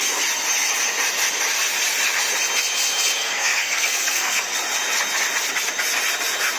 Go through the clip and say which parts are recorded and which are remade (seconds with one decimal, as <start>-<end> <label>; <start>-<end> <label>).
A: 0.0-3.2 recorded; 3.2-4.6 remade; 4.6-6.6 recorded